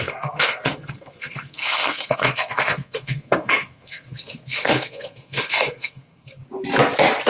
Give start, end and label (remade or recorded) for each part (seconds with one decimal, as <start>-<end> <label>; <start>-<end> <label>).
0.0-6.4 remade; 6.4-7.3 recorded

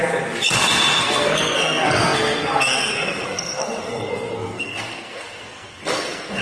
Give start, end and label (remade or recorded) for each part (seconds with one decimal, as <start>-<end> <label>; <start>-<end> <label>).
0.0-1.0 recorded; 1.0-6.4 remade

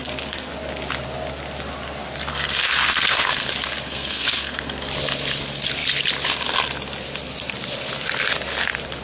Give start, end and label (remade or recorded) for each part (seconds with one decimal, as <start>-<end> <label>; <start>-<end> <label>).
0.0-0.5 remade; 0.5-2.3 recorded; 2.3-3.3 remade; 3.3-3.8 recorded; 3.8-4.9 remade; 4.9-9.0 recorded

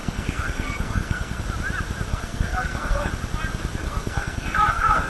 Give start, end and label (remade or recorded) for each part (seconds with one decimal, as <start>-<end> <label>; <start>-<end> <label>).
0.0-1.4 remade; 1.4-2.1 recorded; 2.1-3.1 remade; 3.1-3.8 recorded; 3.8-5.1 remade